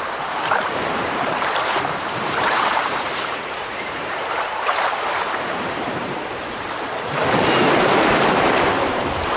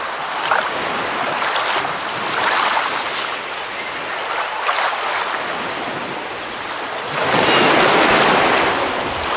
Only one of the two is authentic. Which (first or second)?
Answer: second